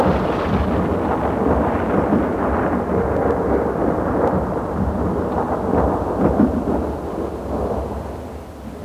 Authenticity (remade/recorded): recorded